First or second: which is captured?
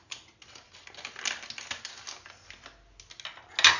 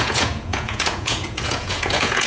first